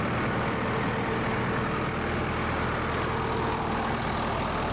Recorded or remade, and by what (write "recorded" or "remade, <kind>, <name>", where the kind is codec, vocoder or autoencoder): recorded